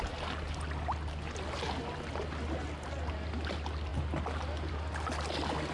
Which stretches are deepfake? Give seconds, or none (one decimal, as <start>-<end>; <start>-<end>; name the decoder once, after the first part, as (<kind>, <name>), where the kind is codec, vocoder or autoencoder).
none